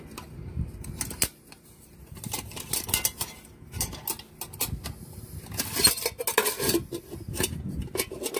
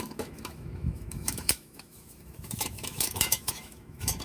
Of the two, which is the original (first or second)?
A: first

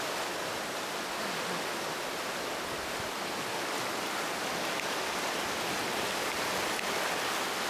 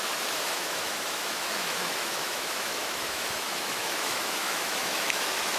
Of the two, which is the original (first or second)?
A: first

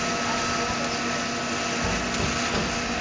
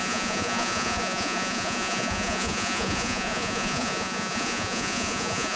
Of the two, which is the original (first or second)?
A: first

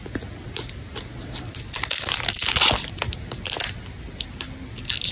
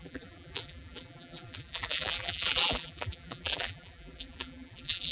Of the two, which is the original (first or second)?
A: first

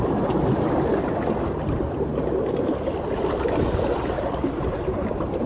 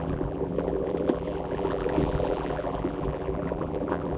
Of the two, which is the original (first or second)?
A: first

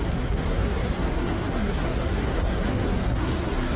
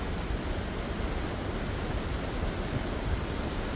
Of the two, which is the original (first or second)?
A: second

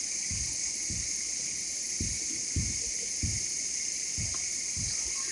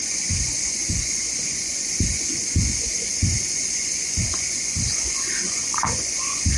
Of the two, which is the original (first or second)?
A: first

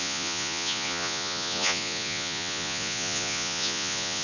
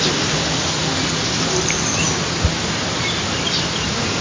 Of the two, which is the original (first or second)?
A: second